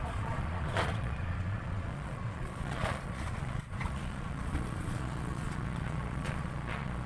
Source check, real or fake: fake